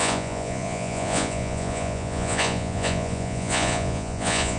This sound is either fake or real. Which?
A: fake